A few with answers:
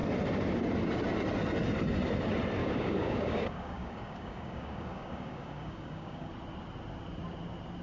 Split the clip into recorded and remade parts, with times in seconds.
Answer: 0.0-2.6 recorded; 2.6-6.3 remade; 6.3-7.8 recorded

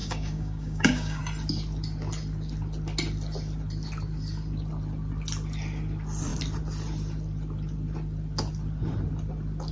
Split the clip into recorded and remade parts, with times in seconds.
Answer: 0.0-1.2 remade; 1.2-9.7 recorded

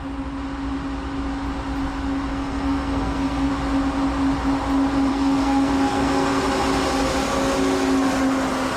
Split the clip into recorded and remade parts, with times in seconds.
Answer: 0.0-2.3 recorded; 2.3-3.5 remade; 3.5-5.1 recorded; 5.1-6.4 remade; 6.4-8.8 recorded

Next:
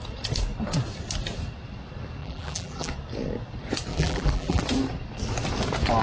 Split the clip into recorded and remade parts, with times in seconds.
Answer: 0.0-2.2 recorded; 2.2-2.9 remade; 2.9-3.9 recorded; 3.9-4.6 remade; 4.6-6.0 recorded

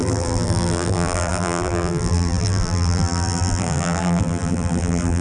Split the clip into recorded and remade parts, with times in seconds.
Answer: 0.0-5.2 remade

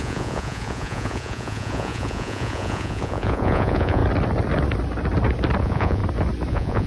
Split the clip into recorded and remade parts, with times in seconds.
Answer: 0.0-4.0 remade; 4.0-5.6 recorded; 5.6-6.0 remade; 6.0-6.5 recorded; 6.5-6.9 remade

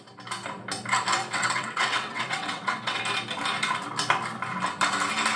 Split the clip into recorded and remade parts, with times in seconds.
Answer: 0.0-1.2 recorded; 1.2-3.0 remade; 3.0-5.4 recorded